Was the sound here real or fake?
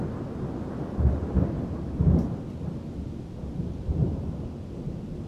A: real